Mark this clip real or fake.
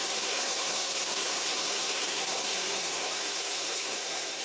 fake